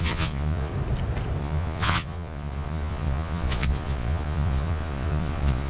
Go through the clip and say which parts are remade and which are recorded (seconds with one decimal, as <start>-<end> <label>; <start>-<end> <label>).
0.0-0.7 remade; 0.7-1.4 recorded; 1.4-5.7 remade

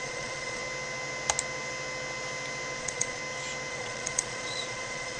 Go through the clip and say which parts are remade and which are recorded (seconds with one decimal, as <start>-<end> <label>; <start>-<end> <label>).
0.0-0.6 remade; 0.6-2.8 recorded; 2.8-3.2 remade; 3.2-3.7 recorded; 3.7-5.2 remade